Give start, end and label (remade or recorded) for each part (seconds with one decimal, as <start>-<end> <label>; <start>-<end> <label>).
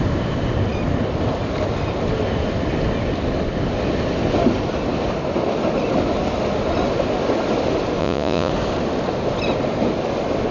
0.0-8.0 recorded; 8.0-8.5 remade; 8.5-10.5 recorded